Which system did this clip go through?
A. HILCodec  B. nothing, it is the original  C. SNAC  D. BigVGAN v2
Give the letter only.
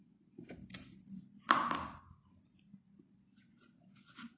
D